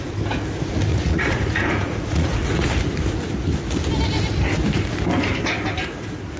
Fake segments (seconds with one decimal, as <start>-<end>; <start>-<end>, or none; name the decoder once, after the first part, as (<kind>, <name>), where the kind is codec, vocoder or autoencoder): 0.9-2.7 (vocoder, Vocos)